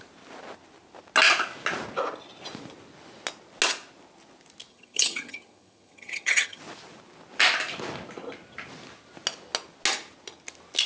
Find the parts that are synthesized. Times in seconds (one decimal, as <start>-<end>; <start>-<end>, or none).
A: 4.7-6.6